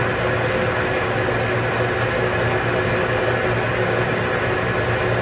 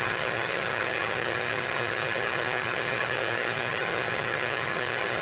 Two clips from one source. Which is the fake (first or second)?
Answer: second